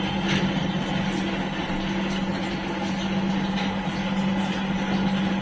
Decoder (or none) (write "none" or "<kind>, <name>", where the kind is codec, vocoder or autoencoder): none